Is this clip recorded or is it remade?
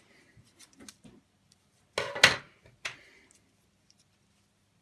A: recorded